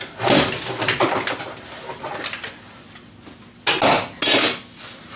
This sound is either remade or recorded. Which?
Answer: recorded